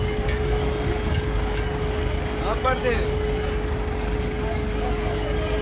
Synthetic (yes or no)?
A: yes